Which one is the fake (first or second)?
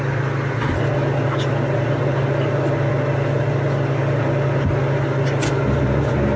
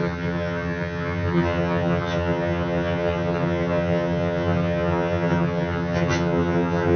second